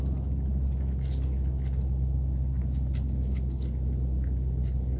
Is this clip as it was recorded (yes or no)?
yes